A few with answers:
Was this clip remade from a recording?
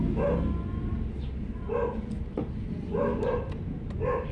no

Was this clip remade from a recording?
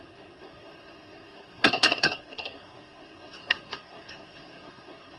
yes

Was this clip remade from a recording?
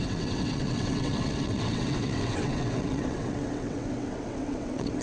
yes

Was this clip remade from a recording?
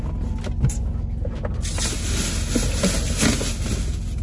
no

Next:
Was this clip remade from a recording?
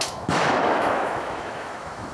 yes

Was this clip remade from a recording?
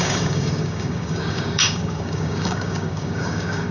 yes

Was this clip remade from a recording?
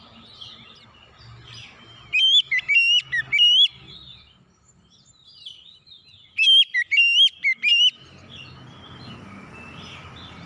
no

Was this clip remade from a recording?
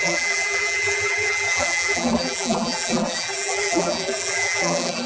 yes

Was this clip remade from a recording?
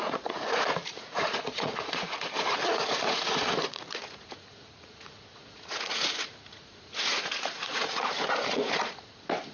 yes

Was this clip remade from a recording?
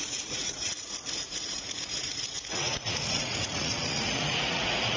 yes